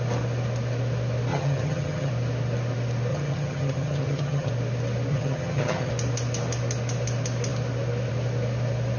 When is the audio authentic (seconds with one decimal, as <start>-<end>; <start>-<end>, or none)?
0.0-1.3; 2.1-3.1; 4.5-5.1; 5.9-9.0

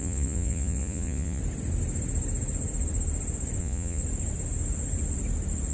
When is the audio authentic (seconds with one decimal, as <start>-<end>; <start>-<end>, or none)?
1.4-3.6; 4.0-5.7

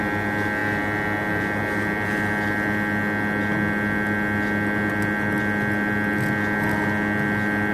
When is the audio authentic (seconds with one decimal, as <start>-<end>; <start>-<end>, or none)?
0.0-7.7